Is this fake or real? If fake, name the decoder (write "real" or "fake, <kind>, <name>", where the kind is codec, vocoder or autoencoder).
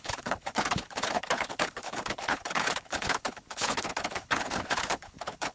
fake, codec, HILCodec